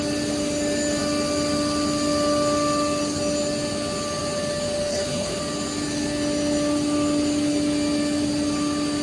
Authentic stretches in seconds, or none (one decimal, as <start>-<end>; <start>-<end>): 0.0-4.9; 5.4-9.0